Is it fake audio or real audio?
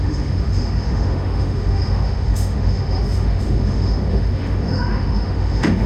fake